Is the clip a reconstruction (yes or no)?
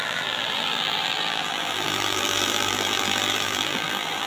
yes